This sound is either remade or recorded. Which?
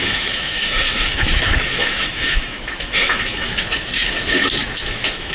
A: remade